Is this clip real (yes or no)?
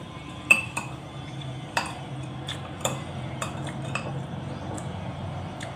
no